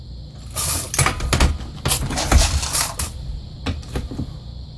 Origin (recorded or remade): recorded